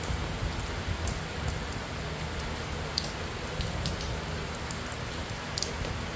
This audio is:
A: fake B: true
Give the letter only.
B